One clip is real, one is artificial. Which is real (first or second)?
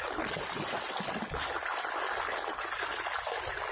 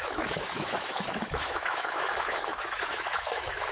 first